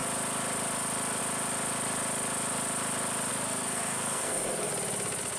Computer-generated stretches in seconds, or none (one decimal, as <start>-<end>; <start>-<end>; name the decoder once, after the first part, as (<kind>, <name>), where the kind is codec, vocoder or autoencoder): 3.3-4.7 (codec, SNAC)